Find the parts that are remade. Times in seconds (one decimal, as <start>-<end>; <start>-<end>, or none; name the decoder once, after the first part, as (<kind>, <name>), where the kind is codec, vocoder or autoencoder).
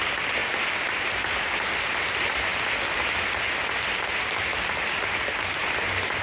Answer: none